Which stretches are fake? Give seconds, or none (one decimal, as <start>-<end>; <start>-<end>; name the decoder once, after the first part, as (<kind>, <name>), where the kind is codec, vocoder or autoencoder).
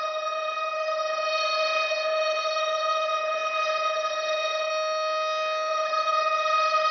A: 0.0-4.7 (vocoder, HiFi-GAN); 5.7-6.9